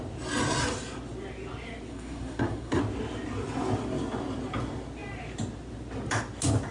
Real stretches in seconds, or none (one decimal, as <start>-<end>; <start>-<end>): 0.0-1.9; 2.8-6.7